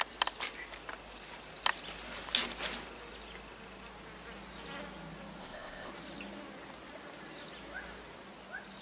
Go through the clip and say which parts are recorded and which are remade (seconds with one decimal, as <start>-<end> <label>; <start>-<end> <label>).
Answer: 0.0-5.4 recorded; 5.4-5.9 remade; 5.9-8.8 recorded